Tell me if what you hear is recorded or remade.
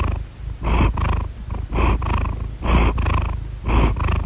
recorded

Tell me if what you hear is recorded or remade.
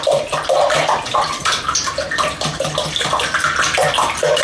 remade